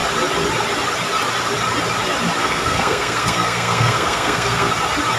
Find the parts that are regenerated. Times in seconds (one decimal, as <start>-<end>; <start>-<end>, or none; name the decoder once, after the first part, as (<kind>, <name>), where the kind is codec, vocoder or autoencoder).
2.4-4.7 (codec, SNAC)